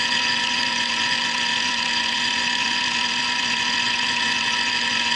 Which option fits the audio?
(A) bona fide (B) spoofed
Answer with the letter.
B